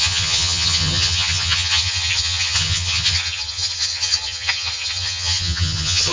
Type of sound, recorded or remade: remade